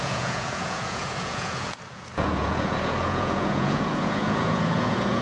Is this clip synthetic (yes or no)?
yes